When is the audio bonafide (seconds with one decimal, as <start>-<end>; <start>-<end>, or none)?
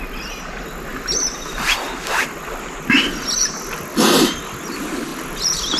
0.0-5.8